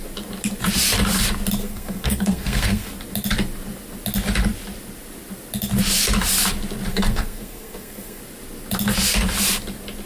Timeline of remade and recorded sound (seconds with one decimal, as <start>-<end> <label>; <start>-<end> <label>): 0.0-1.6 recorded; 1.6-2.9 remade; 2.9-6.9 recorded; 6.9-8.2 remade; 8.2-10.1 recorded